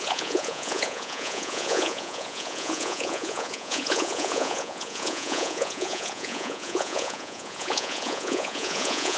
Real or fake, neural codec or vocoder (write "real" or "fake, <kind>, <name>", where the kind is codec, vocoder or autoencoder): fake, vocoder, Vocos